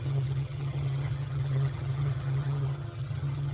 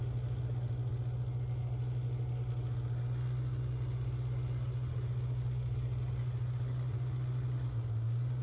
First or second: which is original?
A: second